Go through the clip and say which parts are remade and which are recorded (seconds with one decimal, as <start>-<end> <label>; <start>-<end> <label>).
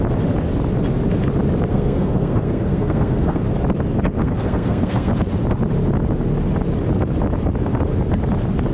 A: 0.0-1.7 recorded; 1.7-3.4 remade; 3.4-4.2 recorded; 4.2-5.1 remade; 5.1-8.7 recorded